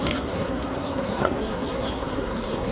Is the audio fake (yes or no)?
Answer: yes